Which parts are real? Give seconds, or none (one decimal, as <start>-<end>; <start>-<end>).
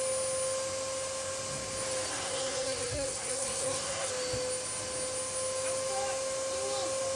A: 0.0-2.1; 4.1-7.2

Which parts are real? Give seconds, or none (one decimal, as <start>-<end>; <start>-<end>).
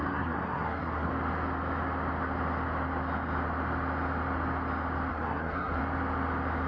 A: 1.1-5.1; 5.8-6.7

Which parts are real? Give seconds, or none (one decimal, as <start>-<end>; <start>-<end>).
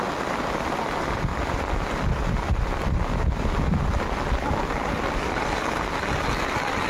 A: 0.0-6.9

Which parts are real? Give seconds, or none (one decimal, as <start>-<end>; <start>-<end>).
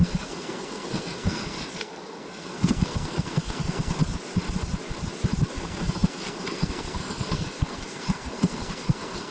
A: 4.0-5.5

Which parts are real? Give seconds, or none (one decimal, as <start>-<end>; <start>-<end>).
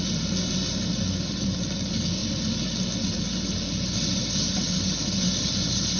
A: 0.0-6.0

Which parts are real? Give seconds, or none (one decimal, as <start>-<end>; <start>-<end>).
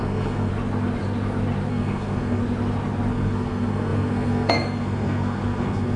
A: 0.5-1.7; 2.4-3.1